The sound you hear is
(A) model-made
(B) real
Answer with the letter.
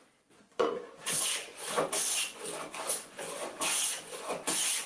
A